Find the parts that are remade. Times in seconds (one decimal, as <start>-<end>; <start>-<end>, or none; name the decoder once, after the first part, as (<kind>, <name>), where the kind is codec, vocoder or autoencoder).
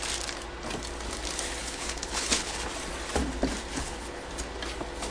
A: 1.6-2.7 (codec, HILCodec); 3.7-4.3